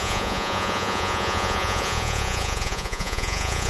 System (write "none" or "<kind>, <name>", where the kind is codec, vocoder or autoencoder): vocoder, Vocos